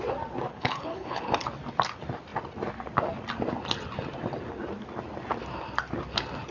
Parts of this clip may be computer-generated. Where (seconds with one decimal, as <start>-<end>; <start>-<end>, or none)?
0.5-1.4